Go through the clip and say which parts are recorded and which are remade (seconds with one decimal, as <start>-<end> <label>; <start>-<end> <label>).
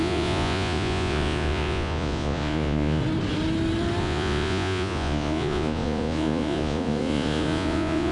0.0-3.0 remade; 3.0-4.0 recorded; 4.0-8.1 remade